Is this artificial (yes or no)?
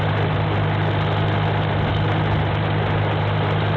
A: no